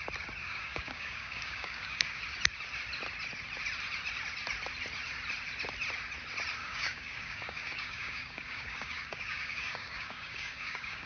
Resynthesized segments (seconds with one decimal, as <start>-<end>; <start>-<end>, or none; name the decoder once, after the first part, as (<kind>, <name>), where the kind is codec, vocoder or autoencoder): 0.4-2.2 (codec, DAC); 6.6-11.1

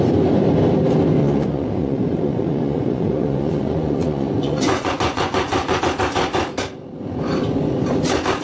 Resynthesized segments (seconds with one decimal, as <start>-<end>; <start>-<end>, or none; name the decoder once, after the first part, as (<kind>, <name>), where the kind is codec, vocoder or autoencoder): 1.2-5.8 (vocoder, Vocos)

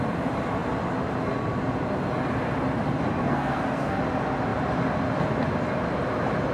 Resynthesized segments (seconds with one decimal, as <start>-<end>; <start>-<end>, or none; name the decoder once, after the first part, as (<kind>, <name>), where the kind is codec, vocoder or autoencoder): 3.2-4.0 (codec, SNAC)

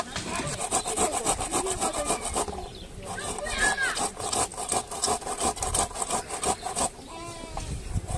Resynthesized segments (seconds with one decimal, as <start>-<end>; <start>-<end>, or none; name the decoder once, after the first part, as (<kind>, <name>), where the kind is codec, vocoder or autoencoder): none